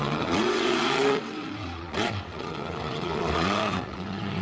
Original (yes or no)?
no